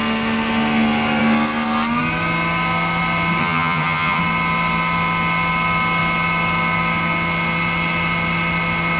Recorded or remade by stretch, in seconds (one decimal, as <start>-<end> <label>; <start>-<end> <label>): 0.0-3.4 recorded; 3.4-4.2 remade; 4.2-9.0 recorded